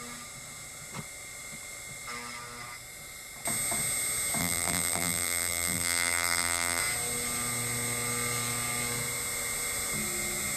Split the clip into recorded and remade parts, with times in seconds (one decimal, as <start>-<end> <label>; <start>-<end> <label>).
0.0-4.4 recorded; 4.4-6.8 remade; 6.8-10.6 recorded